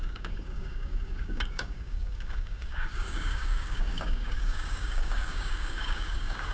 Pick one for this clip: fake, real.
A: fake